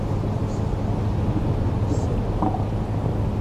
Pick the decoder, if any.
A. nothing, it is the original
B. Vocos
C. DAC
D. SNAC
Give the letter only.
A